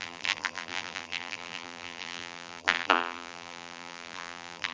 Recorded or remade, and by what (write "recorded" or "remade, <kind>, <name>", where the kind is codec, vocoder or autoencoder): remade, vocoder, BigVGAN v2